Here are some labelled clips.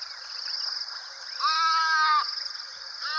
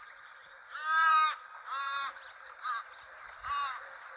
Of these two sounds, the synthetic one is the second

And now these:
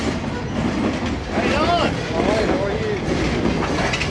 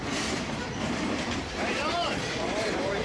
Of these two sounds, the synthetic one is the second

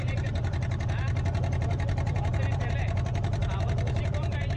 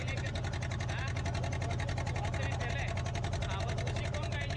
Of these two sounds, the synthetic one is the first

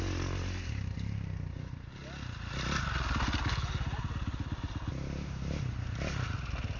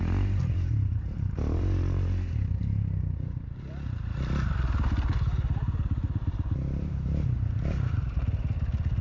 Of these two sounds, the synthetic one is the second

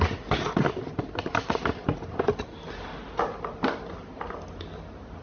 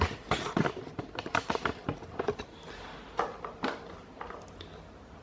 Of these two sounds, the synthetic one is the second